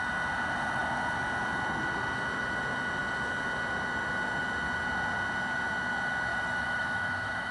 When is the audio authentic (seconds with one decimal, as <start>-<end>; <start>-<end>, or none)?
0.0-6.3